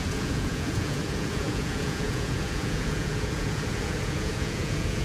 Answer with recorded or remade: remade